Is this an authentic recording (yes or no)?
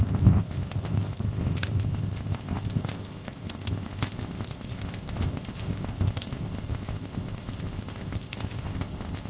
no